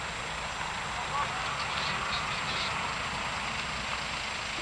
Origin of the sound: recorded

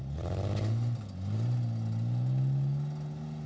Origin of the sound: recorded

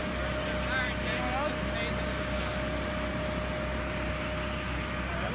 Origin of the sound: recorded